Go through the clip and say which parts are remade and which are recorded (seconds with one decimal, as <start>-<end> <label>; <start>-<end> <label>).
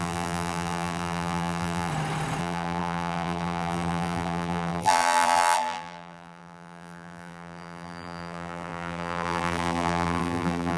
0.0-1.9 remade; 1.9-2.4 recorded; 2.4-10.8 remade